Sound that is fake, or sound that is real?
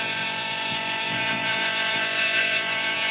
fake